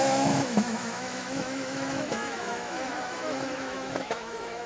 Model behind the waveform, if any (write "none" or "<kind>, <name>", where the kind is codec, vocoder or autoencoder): autoencoder, DAC-VAE